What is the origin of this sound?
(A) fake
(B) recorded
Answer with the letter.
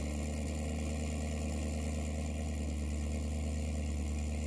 B